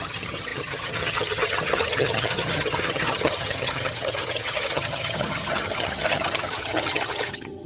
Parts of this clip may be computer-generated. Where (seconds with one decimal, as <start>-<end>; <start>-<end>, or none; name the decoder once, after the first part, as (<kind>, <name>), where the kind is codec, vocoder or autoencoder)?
0.0-7.7 (vocoder, HiFi-GAN)